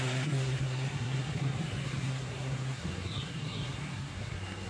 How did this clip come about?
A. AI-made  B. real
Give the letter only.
A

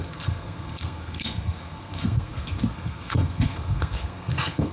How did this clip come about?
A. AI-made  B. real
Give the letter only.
A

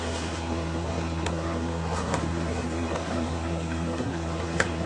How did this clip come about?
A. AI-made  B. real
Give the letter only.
A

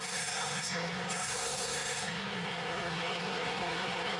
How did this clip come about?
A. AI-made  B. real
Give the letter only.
A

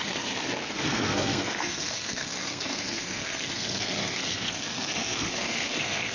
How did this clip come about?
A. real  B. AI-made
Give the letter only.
B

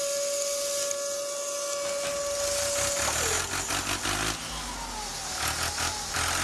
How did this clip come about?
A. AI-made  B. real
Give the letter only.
B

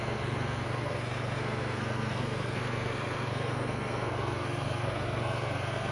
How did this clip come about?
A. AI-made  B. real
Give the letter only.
A